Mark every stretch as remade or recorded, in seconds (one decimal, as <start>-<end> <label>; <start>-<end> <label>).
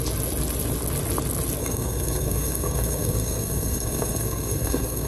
0.0-1.6 recorded; 1.6-5.1 remade